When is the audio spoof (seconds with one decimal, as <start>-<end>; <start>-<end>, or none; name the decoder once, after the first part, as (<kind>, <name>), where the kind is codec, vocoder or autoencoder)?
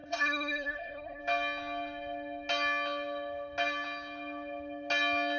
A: 0.0-1.2 (codec, SNAC)